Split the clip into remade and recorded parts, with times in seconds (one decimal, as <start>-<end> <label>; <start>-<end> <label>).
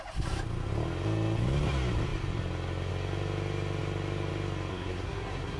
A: 0.0-4.7 recorded; 4.7-5.6 remade